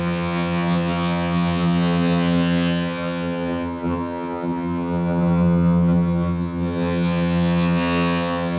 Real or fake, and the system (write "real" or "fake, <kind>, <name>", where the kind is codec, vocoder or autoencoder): fake, vocoder, HiFi-GAN